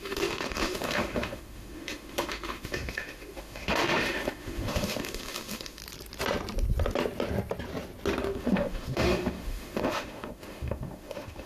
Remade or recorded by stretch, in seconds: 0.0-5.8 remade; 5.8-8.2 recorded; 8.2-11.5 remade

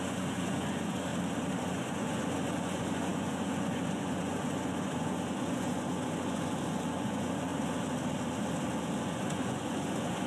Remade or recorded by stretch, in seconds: 0.0-1.1 remade; 1.1-1.6 recorded; 1.6-7.5 remade; 7.5-9.0 recorded; 9.0-10.3 remade

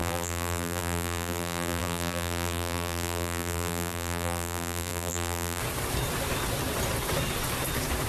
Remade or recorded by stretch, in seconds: 0.0-5.6 remade; 5.6-8.1 recorded

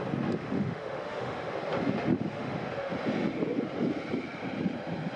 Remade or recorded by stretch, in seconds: 0.0-0.4 recorded; 0.4-1.5 remade; 1.5-2.1 recorded; 2.1-2.9 remade; 2.9-5.2 recorded